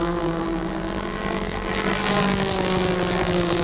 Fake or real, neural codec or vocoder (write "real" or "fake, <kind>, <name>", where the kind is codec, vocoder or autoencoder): fake, vocoder, BigVGAN v2